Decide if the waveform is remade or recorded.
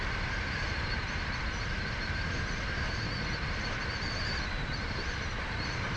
remade